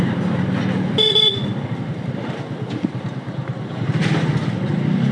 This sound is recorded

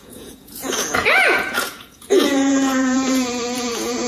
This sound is remade